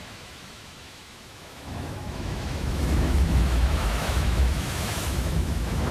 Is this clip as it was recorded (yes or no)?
no